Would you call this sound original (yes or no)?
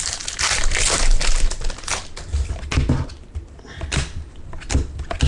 yes